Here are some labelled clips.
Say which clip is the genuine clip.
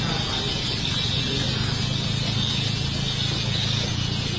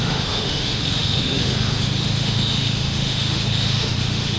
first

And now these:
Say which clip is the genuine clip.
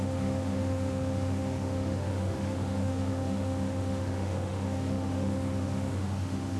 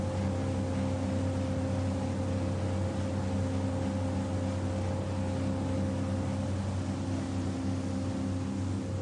second